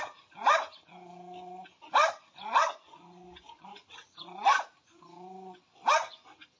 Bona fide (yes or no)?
yes